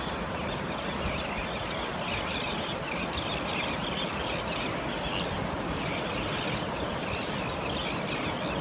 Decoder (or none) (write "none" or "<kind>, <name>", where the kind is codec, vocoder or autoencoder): none